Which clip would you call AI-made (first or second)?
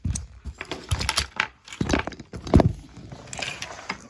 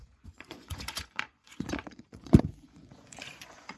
second